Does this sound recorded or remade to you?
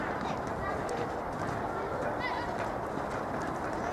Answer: recorded